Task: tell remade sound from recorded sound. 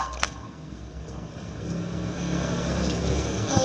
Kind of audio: remade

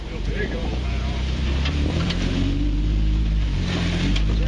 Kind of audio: remade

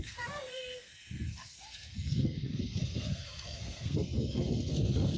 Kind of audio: remade